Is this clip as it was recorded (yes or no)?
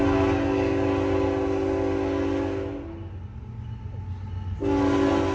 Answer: yes